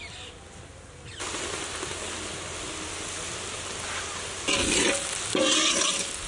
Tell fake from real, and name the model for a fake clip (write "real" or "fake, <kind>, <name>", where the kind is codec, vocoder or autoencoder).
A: real